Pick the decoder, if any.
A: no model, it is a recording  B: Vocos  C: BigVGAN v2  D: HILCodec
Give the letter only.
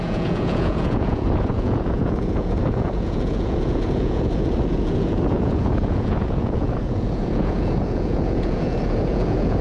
B